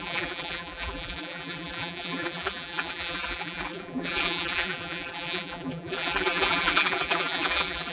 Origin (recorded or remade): remade